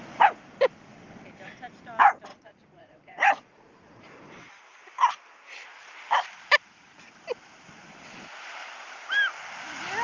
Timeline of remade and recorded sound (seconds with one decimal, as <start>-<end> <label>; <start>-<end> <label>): 0.0-2.3 recorded; 2.3-4.2 remade; 4.2-10.0 recorded